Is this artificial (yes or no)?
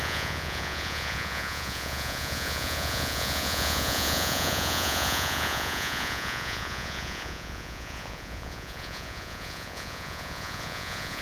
yes